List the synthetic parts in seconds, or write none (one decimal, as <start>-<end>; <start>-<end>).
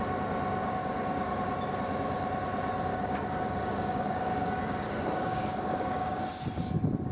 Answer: 0.6-1.4; 2.9-6.3